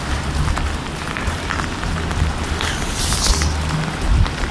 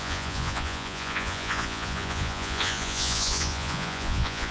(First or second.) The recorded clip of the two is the first